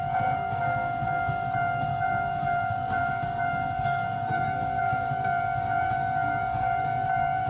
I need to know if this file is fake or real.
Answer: fake